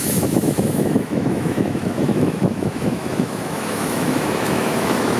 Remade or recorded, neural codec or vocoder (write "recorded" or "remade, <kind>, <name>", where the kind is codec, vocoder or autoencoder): remade, autoencoder, DAC-VAE